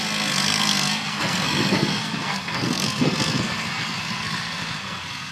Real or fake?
fake